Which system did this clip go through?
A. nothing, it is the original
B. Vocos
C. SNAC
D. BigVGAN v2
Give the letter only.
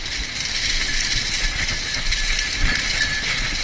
A